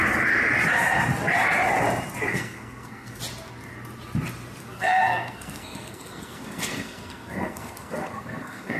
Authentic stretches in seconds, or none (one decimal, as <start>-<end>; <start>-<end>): 0.0-2.3; 3.2-4.6